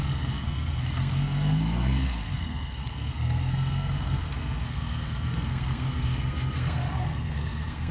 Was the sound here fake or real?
fake